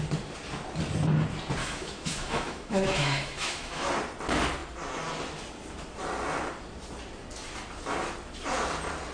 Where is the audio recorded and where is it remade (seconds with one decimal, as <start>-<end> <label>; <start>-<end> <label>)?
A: 0.0-1.6 recorded; 1.6-3.9 remade; 3.9-9.1 recorded